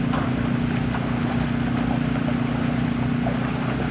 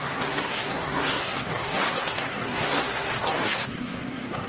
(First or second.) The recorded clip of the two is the first